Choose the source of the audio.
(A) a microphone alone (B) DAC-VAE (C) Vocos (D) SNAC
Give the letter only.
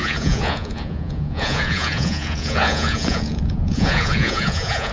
C